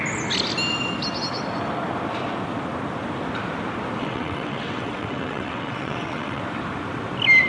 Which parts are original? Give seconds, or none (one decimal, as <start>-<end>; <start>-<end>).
0.0-4.0; 6.4-7.5